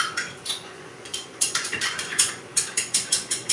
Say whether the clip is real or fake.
fake